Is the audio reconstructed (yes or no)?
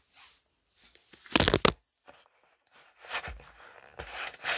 no